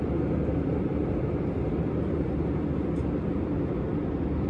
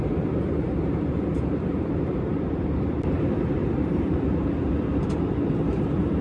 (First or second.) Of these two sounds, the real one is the first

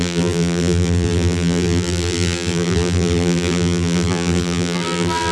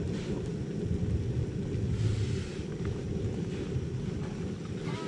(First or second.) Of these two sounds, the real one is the second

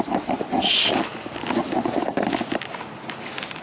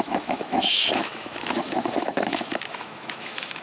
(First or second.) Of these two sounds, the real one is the first